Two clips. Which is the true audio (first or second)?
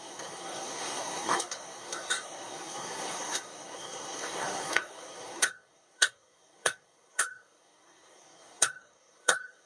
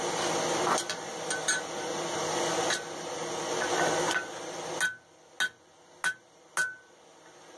second